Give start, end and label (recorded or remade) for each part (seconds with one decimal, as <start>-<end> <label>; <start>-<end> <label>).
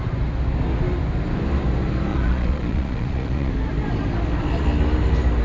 0.0-2.1 recorded; 2.1-3.5 remade; 3.5-5.4 recorded